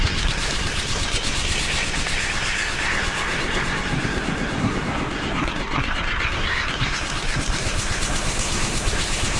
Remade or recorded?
remade